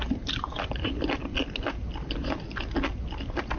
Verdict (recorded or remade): recorded